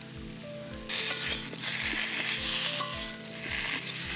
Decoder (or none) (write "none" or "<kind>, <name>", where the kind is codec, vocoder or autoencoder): none